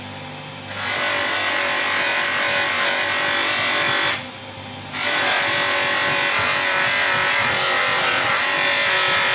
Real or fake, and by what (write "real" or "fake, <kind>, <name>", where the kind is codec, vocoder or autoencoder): real